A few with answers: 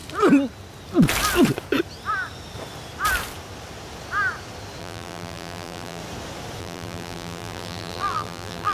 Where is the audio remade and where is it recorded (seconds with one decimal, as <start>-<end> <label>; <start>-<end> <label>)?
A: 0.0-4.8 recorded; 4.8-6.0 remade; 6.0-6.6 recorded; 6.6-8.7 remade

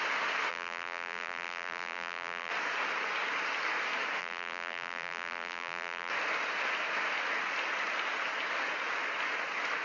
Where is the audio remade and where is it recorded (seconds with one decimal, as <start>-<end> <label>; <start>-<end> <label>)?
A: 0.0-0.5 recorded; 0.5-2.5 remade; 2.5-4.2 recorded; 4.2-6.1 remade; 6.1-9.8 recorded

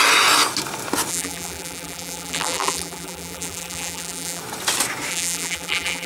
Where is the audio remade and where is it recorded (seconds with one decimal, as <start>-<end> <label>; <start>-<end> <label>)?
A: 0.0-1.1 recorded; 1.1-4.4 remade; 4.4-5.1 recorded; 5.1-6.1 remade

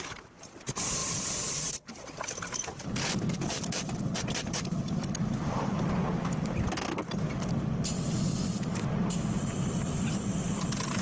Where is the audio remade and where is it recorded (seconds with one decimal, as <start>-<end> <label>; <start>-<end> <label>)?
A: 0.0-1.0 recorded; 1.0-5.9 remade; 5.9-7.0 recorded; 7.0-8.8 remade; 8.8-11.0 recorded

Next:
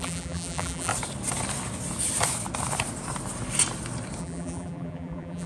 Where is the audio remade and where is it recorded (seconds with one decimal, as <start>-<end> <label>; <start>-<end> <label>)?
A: 0.0-0.9 remade; 0.9-4.2 recorded; 4.2-5.5 remade